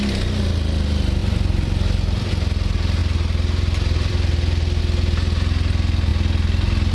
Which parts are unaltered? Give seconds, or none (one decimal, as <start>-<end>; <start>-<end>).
0.0-1.2; 2.3-3.0; 4.8-6.9